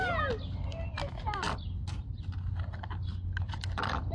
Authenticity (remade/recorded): recorded